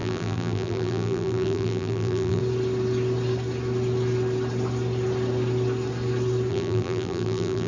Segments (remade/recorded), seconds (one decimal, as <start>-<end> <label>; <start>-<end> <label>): 0.0-2.4 remade; 2.4-6.5 recorded; 6.5-7.7 remade